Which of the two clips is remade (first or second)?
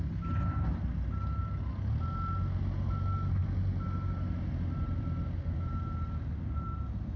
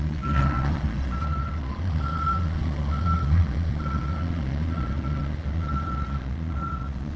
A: second